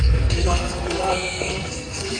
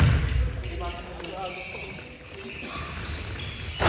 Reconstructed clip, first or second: first